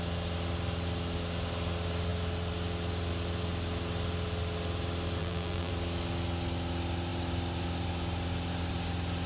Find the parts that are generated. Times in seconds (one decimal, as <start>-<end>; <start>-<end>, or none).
5.2-5.7

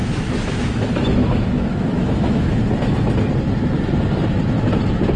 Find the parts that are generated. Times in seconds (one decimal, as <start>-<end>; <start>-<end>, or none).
0.0-2.6

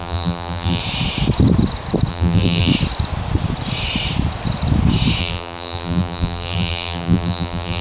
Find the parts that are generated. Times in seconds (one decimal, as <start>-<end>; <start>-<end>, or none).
0.0-0.8; 2.1-2.7; 5.2-7.8